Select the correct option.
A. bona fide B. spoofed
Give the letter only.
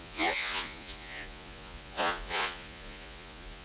B